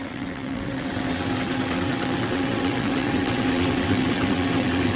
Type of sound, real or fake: fake